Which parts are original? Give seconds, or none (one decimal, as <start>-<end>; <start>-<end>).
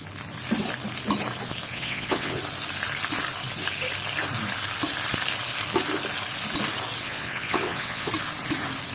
0.0-1.7; 2.4-7.0; 8.1-8.9